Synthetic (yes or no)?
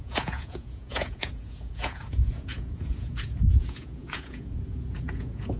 yes